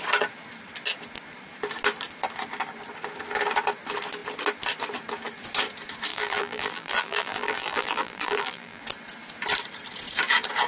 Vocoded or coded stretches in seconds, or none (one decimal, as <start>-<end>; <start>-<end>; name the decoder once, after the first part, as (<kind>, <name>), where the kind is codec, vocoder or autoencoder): 6.1-8.8 (vocoder, BigVGAN v2)